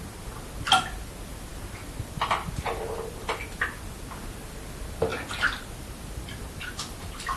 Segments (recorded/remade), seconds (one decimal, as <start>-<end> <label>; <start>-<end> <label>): 0.0-7.4 recorded